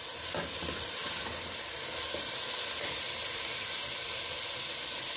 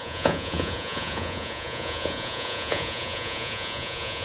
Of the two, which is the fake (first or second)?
second